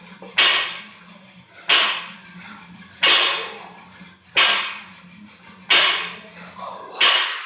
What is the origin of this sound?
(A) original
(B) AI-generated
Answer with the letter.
A